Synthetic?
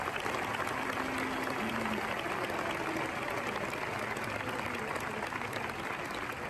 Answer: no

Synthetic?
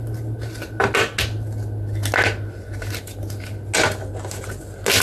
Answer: no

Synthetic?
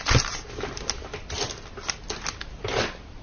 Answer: no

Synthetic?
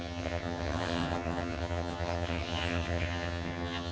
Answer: yes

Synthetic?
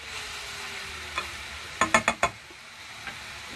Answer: no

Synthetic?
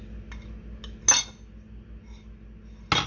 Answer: no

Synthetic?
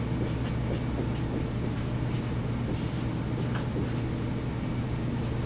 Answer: no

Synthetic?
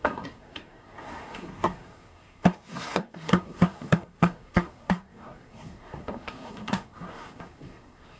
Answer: yes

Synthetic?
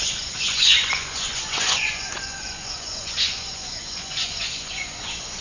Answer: yes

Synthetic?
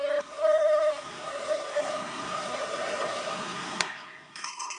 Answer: yes